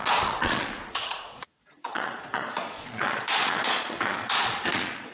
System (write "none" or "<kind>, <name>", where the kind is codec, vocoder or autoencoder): vocoder, Vocos